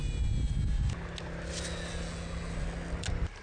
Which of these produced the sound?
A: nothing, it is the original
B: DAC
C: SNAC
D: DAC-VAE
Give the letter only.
A